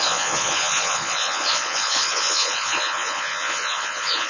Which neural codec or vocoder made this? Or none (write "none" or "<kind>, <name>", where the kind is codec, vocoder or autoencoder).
vocoder, Vocos